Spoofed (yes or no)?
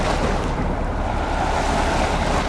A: no